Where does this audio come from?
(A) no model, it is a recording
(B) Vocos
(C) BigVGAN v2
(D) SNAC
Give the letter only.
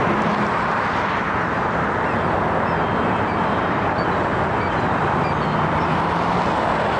A